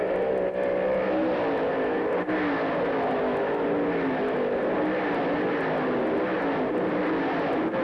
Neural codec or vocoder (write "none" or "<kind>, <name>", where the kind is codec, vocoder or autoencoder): none